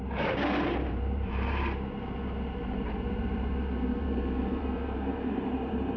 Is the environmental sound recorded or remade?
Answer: remade